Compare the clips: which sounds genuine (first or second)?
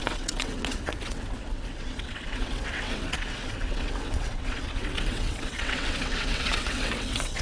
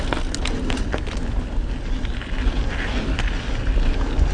second